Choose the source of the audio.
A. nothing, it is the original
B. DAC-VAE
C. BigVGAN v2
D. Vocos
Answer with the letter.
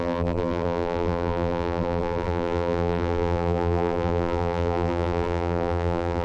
C